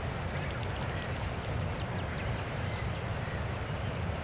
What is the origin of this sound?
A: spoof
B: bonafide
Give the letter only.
B